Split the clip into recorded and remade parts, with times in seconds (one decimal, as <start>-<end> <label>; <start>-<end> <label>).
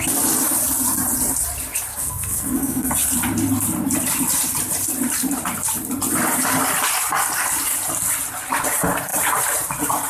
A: 0.0-1.9 recorded; 1.9-2.9 remade; 2.9-10.1 recorded